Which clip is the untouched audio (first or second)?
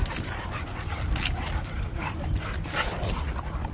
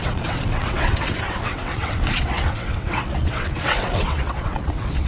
first